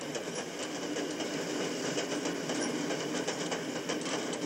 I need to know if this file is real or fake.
real